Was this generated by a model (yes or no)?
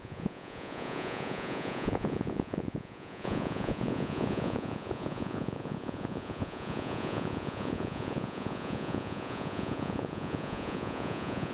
yes